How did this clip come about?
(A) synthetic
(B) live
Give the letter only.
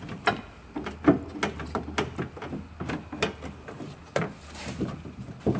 B